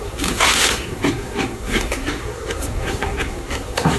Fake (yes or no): yes